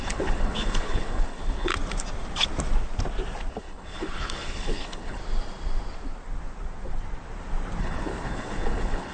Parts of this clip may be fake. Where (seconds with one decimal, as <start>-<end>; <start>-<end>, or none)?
0.0-1.7; 3.5-5.2; 7.8-9.1